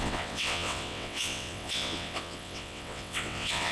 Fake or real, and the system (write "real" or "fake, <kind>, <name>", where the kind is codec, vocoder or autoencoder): fake, vocoder, WaveNeXt